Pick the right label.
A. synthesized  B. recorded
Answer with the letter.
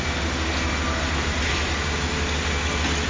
B